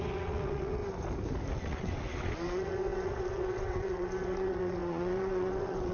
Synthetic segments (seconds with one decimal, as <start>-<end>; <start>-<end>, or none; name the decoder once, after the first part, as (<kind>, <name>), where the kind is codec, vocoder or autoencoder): 0.0-0.8 (vocoder, WaveNeXt); 1.5-5.9